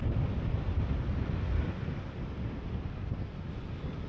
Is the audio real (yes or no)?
yes